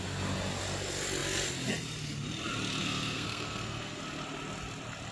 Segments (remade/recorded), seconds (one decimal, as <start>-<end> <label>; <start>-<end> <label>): 0.0-2.8 recorded; 2.8-4.0 remade; 4.0-5.1 recorded